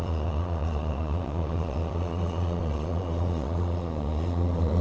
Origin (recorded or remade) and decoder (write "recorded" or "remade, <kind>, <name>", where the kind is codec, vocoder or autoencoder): remade, vocoder, Vocos